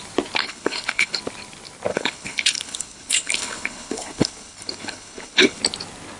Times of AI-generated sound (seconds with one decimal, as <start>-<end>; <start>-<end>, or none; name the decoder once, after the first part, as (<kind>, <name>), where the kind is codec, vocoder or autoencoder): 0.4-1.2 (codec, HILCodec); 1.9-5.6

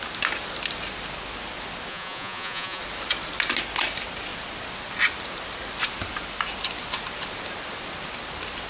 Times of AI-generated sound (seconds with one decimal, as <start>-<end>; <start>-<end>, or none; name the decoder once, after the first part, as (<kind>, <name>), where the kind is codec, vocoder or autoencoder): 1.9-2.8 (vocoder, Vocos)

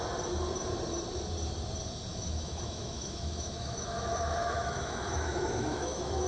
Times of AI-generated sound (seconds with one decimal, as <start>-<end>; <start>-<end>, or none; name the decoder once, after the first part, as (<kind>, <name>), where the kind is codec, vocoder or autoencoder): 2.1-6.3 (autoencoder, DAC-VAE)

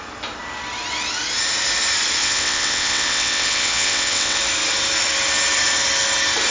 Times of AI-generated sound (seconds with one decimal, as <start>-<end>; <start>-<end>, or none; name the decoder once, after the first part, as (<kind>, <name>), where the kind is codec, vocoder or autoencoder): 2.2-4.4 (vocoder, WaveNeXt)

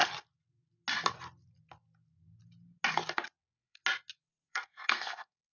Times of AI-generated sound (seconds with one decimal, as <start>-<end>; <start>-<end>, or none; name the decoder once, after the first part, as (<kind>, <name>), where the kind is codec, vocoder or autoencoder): 3.4-3.8 (codec, SNAC); 4.5-5.6

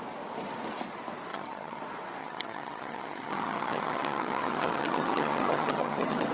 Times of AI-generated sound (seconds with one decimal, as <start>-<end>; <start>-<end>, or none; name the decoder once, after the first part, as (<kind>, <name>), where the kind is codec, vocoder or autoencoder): 1.3-1.8 (vocoder, HiFi-GAN); 2.2-6.3